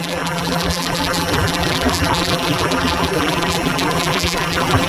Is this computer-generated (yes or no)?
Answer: yes